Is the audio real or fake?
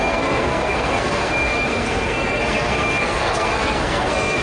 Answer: fake